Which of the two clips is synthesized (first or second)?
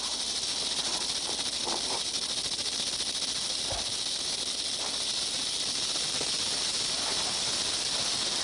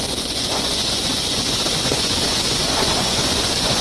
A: second